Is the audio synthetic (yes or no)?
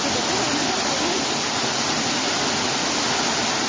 no